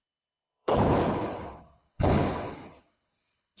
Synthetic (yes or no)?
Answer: yes